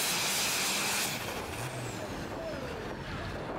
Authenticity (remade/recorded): recorded